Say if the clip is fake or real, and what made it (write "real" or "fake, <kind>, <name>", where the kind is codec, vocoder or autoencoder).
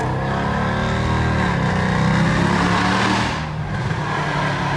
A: real